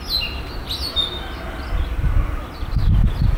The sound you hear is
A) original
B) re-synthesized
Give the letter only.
A